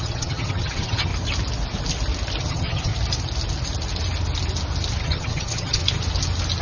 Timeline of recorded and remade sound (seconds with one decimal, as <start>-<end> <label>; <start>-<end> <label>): 0.0-1.1 remade; 1.1-2.4 recorded; 2.4-2.9 remade; 2.9-5.0 recorded; 5.0-5.8 remade; 5.8-6.6 recorded